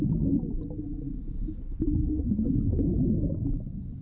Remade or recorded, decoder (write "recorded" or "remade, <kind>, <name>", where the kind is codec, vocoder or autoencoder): recorded